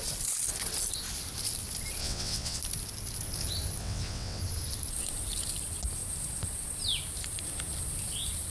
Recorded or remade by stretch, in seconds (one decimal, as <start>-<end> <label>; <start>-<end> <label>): 0.0-2.0 recorded; 2.0-2.6 remade; 2.6-3.8 recorded; 3.8-4.4 remade; 4.4-8.5 recorded